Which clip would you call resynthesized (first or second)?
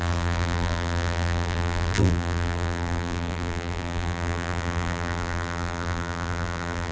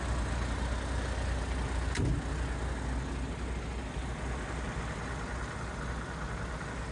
first